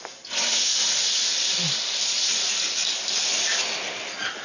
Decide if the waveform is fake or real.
real